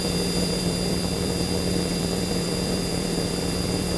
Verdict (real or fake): fake